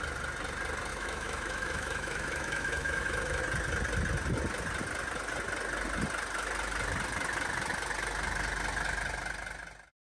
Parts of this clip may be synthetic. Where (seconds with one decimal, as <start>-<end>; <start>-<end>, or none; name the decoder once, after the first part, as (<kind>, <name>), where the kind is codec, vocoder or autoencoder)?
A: 0.9-3.4 (autoencoder, DAC-VAE)